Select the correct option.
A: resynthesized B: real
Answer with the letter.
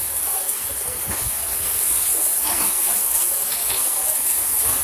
A